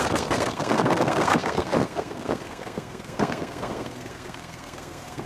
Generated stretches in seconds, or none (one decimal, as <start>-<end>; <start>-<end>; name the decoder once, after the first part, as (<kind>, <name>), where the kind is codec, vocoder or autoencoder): 0.0-5.3 (codec, SNAC)